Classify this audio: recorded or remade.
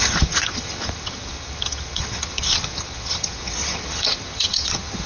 remade